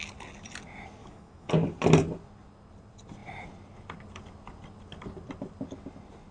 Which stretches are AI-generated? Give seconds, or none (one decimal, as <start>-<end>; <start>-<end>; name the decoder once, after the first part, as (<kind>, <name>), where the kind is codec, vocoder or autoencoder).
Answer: 1.0-1.5 (autoencoder, DAC-VAE)